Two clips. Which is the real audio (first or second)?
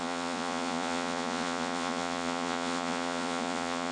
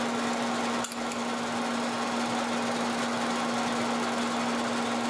second